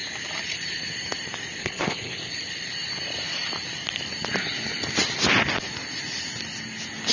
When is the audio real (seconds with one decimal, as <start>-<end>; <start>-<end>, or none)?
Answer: 0.0-1.6; 2.3-7.1